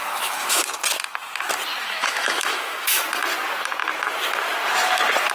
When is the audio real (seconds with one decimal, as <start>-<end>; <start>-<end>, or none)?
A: 0.6-1.8; 3.0-5.3